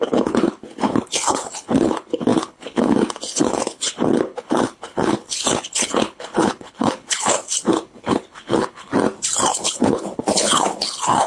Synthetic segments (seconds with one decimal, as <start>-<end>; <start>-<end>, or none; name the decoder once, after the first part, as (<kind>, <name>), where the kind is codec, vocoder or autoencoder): 0.0-8.9 (codec, HILCodec); 9.5-11.3